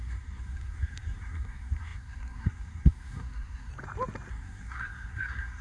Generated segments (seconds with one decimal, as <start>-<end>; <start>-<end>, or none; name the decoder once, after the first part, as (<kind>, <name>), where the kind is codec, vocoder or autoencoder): 0.0-3.7 (codec, SNAC); 4.3-5.6